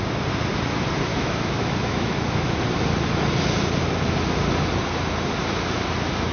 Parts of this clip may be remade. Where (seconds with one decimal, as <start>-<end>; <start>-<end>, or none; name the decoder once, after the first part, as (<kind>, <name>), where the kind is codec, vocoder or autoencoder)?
1.1-2.6 (autoencoder, DAC-VAE)